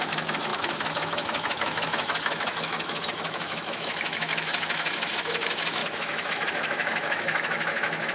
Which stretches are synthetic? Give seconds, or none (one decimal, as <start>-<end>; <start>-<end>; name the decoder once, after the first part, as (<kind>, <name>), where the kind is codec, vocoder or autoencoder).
0.0-8.1 (autoencoder, DAC-VAE)